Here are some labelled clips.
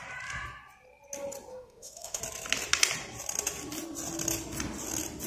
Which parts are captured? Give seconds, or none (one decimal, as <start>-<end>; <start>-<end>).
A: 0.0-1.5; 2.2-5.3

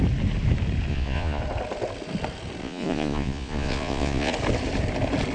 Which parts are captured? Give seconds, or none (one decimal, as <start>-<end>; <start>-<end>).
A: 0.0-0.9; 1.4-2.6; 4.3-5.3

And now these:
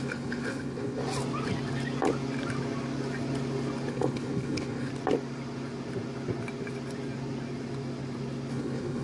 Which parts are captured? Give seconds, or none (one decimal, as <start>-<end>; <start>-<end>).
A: 1.0-3.9; 4.9-8.5

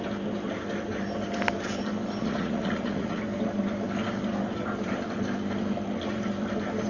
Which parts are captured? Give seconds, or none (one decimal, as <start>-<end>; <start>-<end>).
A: 0.0-2.2; 3.2-6.9